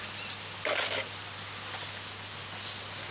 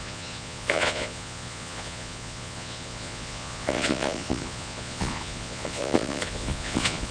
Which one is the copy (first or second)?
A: second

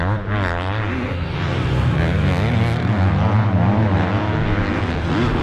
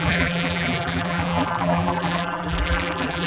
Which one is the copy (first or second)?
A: second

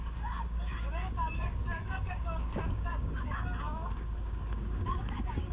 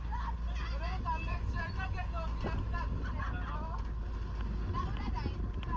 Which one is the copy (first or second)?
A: first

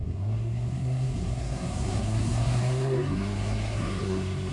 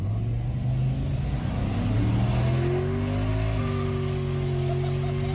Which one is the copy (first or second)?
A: first